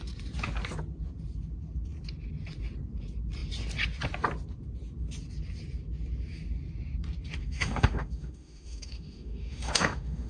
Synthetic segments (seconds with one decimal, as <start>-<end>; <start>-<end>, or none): 7.4-10.3